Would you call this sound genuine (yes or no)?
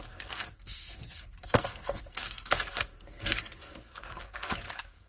no